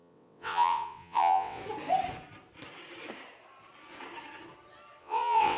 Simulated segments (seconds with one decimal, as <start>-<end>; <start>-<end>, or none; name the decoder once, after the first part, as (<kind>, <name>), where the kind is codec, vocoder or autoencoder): 0.0-1.6 (vocoder, WaveNeXt); 5.0-5.6

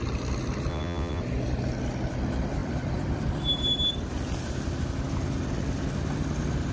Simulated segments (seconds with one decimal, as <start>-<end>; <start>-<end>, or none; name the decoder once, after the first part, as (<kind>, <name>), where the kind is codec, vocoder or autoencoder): 0.7-1.2 (vocoder, WaveNeXt)

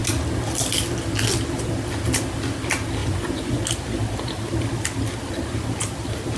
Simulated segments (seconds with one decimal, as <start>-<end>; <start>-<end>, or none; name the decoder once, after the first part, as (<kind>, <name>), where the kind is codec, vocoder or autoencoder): 3.0-3.6 (vocoder, Vocos)

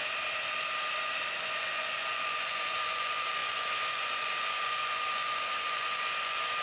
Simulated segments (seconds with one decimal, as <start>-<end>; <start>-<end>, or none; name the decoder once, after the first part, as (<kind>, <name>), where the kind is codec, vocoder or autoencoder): 1.3-6.6 (vocoder, Vocos)

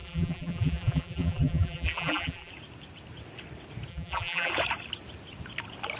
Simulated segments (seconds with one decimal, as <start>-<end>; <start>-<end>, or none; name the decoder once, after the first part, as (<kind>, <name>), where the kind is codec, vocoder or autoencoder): 0.0-2.5 (vocoder, BigVGAN v2); 3.9-4.5

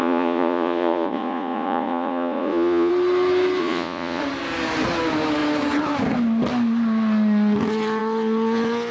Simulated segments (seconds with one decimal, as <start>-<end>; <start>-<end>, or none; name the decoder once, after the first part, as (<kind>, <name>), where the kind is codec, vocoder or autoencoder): 0.0-2.9 (vocoder, Vocos); 3.6-4.2

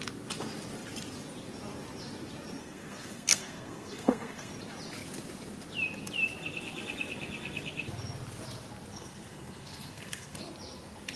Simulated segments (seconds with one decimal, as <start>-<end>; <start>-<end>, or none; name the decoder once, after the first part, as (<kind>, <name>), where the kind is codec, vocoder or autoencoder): 2.6-4.5 (codec, SNAC); 8.9-10.4